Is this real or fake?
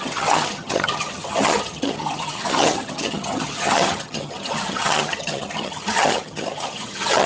fake